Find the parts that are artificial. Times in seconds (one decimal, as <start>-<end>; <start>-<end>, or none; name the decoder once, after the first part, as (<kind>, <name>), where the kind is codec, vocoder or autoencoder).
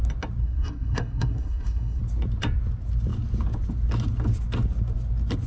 0.4-2.0 (codec, SNAC)